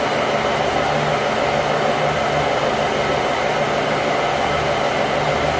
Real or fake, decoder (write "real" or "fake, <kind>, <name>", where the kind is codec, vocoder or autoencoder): real